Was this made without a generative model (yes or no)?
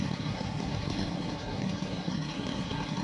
no